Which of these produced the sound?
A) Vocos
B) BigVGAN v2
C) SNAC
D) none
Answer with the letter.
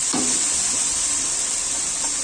D